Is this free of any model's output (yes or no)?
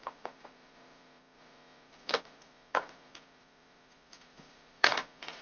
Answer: no